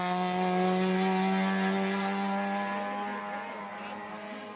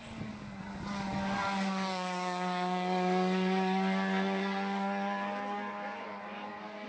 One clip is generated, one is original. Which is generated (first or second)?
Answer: second